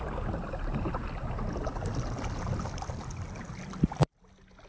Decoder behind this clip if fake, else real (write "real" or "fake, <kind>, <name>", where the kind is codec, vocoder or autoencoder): real